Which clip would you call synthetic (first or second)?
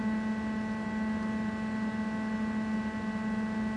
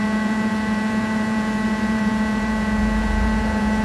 second